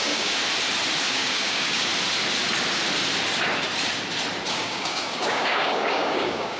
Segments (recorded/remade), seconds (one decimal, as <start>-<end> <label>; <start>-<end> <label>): 0.0-0.4 remade; 0.4-1.1 recorded; 1.1-1.9 remade; 1.9-4.5 recorded; 4.5-6.6 remade